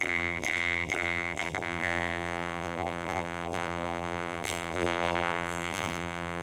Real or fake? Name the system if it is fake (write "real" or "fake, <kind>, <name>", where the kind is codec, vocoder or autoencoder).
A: fake, vocoder, BigVGAN v2